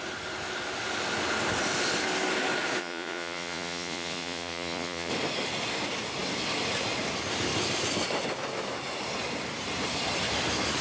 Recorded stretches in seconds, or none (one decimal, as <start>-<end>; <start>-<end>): 0.0-2.8; 5.1-10.8